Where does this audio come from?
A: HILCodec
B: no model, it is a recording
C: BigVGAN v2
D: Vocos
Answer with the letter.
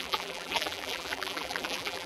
C